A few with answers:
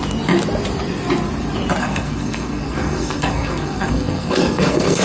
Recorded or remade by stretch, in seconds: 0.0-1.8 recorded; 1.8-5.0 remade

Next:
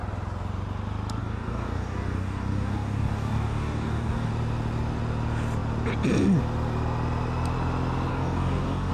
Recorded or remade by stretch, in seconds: 0.0-1.2 recorded; 1.2-4.3 remade; 4.3-8.1 recorded; 8.1-8.9 remade